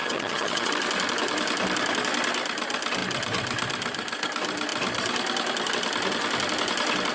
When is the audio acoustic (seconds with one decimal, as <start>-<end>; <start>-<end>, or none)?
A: 0.7-7.1